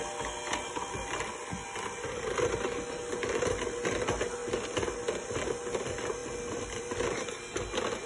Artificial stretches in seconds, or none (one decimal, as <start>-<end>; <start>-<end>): none